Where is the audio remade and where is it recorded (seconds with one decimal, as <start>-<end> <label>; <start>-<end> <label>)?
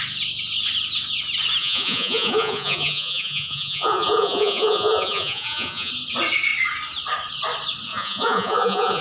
0.0-1.6 recorded; 1.6-5.9 remade; 5.9-7.9 recorded; 7.9-9.0 remade